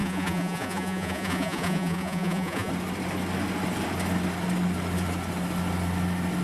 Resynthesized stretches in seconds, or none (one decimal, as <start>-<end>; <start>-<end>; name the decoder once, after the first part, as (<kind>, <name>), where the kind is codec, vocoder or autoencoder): 0.0-2.7 (vocoder, Vocos)